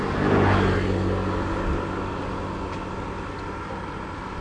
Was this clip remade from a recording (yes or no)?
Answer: no